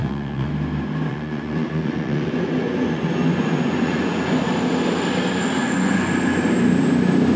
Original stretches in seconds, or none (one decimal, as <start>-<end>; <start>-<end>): 0.5-1.1; 4.4-5.6; 6.1-7.4